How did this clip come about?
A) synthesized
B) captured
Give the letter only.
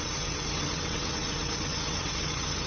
A